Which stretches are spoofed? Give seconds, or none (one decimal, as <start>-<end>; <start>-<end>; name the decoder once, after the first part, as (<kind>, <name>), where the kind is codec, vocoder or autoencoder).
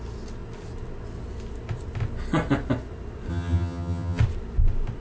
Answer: 3.3-4.2 (vocoder, HiFi-GAN)